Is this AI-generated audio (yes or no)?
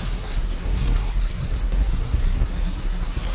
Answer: yes